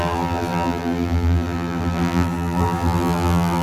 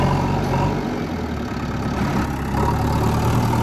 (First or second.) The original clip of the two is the second